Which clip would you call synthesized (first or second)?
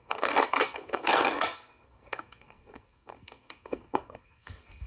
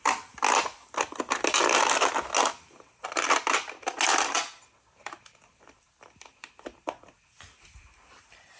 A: first